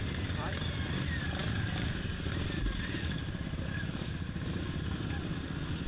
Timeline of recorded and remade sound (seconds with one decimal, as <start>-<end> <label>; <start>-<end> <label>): 0.0-5.9 recorded